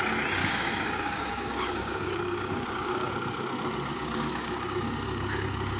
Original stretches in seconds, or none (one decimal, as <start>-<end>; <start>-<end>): 0.0-0.4; 3.1-3.9